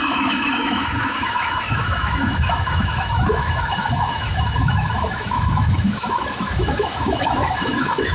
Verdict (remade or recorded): remade